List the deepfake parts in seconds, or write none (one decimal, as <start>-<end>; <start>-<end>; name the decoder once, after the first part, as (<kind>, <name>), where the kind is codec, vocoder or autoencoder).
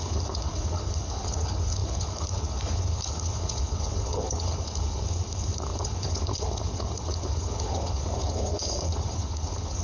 0.0-9.8 (codec, HILCodec)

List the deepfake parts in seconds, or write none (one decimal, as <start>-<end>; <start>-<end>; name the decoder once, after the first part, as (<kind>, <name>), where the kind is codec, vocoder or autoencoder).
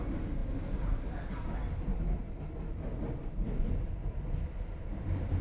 none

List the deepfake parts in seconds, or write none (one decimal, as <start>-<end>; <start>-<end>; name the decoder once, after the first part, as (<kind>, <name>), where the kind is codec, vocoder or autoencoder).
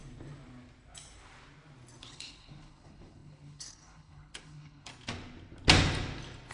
2.0-4.9 (codec, HILCodec)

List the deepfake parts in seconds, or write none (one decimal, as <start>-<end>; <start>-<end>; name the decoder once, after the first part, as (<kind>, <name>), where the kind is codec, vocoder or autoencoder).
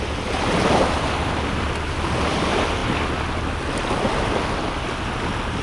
none